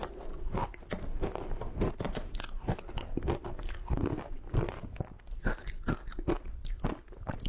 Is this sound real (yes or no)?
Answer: yes